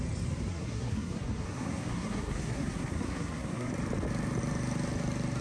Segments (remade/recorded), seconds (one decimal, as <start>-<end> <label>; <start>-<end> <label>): 0.0-0.5 recorded; 0.5-3.7 remade; 3.7-5.4 recorded